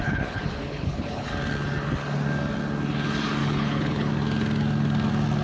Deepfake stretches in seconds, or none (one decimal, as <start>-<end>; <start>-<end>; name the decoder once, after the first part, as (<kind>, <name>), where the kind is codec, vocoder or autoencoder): 0.0-1.3 (codec, HILCodec); 3.4-4.1

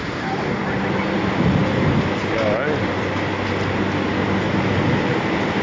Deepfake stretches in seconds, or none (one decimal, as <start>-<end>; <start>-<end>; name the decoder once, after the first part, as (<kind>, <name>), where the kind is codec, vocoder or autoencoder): none

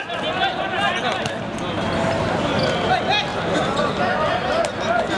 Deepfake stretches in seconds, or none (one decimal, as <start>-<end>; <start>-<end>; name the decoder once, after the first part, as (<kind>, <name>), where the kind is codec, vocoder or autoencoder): none